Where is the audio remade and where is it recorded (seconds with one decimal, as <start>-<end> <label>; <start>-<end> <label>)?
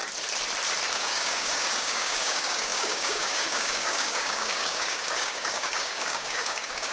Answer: 0.0-0.9 recorded; 0.9-6.9 remade